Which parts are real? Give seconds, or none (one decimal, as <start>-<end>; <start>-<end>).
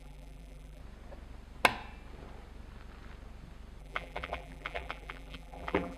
0.8-3.8